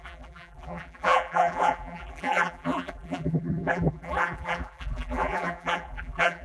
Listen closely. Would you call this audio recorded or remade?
remade